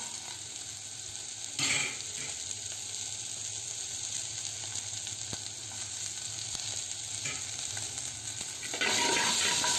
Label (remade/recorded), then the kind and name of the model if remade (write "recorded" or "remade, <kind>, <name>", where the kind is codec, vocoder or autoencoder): recorded